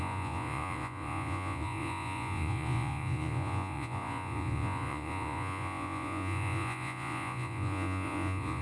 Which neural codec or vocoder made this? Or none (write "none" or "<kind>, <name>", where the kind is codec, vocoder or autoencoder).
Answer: vocoder, Vocos